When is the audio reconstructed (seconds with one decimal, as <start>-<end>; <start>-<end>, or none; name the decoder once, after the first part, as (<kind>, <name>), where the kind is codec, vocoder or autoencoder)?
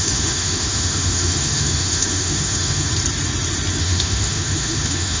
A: 0.0-2.9 (autoencoder, DAC-VAE); 3.8-5.2